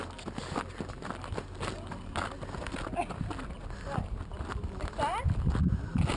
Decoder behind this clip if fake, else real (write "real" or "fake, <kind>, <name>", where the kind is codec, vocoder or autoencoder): real